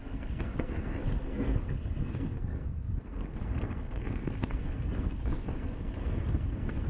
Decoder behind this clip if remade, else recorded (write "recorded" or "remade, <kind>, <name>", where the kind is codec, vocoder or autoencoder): remade, codec, SNAC